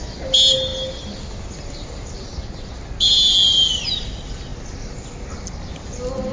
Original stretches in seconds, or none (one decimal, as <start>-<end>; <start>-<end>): 0.0-6.3